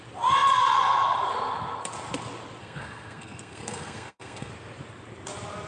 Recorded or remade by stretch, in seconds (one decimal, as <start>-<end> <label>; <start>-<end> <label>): 0.0-2.6 recorded; 2.6-4.5 remade; 4.5-5.7 recorded